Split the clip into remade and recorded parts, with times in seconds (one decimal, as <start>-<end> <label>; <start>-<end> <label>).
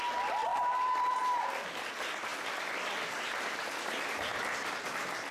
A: 0.0-0.5 recorded; 0.5-1.9 remade; 1.9-5.3 recorded